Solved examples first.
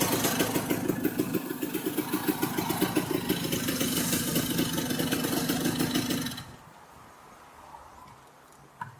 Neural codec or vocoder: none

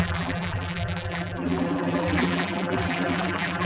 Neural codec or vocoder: vocoder, BigVGAN v2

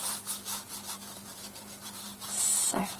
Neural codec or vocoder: vocoder, BigVGAN v2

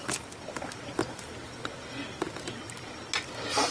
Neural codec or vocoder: none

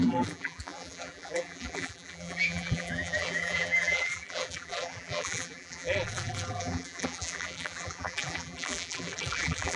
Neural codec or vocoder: vocoder, BigVGAN v2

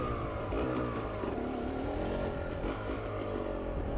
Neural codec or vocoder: none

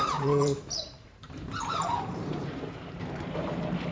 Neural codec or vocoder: vocoder, BigVGAN v2